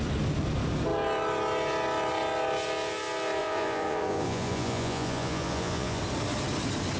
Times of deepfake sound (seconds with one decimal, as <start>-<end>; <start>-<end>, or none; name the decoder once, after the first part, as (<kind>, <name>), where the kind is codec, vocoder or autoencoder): 3.4-6.0 (vocoder, Vocos)

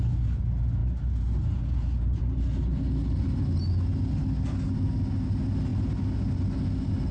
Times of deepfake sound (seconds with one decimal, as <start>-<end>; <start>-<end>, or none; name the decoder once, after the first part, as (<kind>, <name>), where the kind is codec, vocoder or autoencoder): none

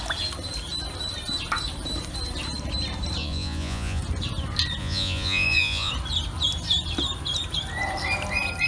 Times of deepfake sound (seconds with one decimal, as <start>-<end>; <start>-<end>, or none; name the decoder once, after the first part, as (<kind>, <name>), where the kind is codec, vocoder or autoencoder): 3.2-4.0 (vocoder, Vocos); 4.8-5.9

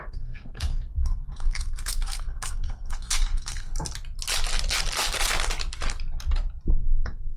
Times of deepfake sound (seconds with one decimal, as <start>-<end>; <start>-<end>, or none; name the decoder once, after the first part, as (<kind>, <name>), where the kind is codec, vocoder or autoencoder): 0.0-3.7 (codec, SNAC); 6.7-7.4

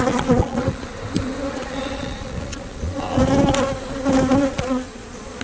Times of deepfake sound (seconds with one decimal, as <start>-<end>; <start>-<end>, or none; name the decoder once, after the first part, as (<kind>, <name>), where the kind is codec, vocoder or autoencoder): 0.0-0.9 (vocoder, Vocos); 1.5-3.2; 4.5-5.4